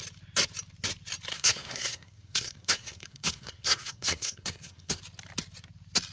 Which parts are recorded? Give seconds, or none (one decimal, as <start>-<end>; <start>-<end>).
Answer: 0.0-1.3; 5.0-6.1